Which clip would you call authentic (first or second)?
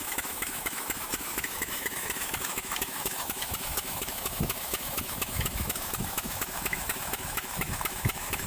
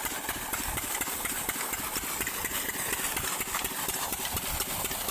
second